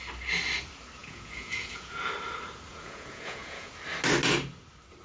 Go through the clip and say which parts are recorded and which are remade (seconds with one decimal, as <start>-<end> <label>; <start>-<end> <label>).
0.0-1.0 recorded; 1.0-2.1 remade; 2.1-2.7 recorded; 2.7-3.7 remade; 3.7-5.0 recorded